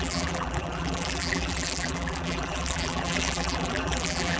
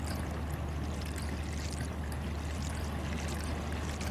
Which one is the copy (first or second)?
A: first